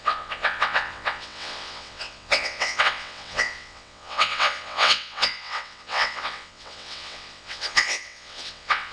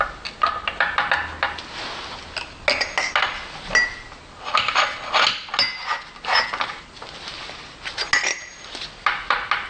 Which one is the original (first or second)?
second